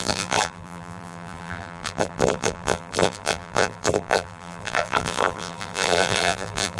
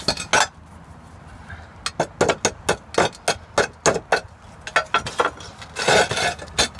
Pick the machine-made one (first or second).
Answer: first